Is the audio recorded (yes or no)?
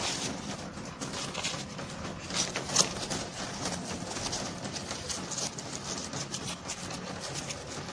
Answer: yes